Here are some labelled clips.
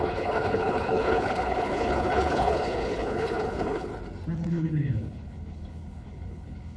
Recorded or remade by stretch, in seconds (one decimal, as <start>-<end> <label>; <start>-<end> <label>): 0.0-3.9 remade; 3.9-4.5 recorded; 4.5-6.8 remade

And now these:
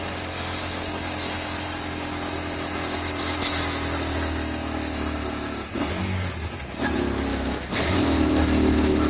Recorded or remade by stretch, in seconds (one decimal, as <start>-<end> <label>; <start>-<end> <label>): 0.0-9.1 recorded

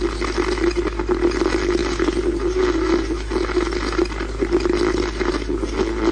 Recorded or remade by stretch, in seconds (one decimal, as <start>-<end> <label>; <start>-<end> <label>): 0.0-6.1 recorded